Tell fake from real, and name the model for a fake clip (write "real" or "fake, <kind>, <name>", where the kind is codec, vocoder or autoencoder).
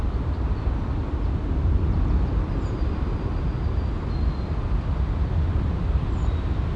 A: real